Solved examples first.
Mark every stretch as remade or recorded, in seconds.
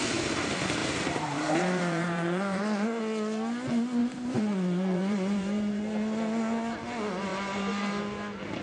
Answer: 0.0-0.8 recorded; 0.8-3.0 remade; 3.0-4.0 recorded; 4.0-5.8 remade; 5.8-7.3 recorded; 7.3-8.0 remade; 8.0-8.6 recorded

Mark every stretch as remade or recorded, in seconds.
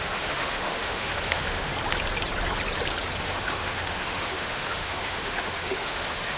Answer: 0.0-1.7 remade; 1.7-3.2 recorded; 3.2-6.4 remade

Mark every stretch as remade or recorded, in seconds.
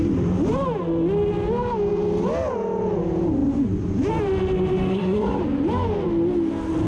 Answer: 0.0-4.9 recorded; 4.9-5.4 remade; 5.4-6.9 recorded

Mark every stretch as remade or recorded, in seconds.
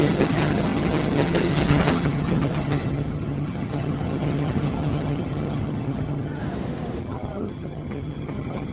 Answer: 0.0-6.4 remade; 6.4-7.0 recorded; 7.0-8.7 remade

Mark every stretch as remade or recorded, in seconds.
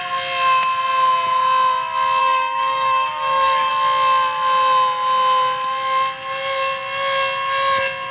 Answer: 0.0-2.2 recorded; 2.2-3.7 remade; 3.7-8.1 recorded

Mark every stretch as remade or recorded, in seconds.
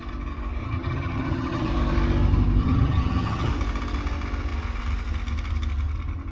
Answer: 0.0-0.6 recorded; 0.6-1.7 remade; 1.7-2.6 recorded; 2.6-3.5 remade; 3.5-6.3 recorded